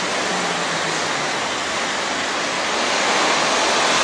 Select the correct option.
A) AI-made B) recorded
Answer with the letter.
B